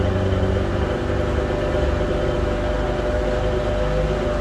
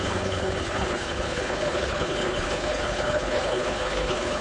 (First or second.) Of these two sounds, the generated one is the second